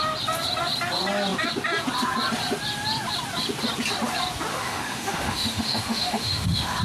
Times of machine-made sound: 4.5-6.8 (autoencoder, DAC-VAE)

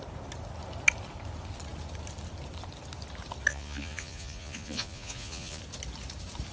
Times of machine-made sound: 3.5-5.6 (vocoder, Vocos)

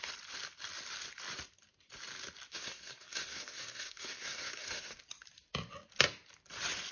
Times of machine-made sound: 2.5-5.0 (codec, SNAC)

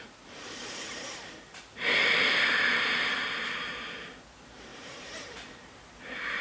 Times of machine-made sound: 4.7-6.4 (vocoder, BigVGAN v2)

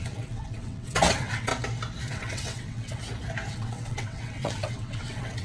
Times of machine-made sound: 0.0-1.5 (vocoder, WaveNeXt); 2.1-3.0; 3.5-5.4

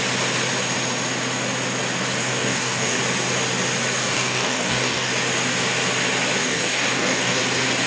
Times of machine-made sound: 2.2-3.0 (codec, DAC); 4.0-5.1; 6.4-7.4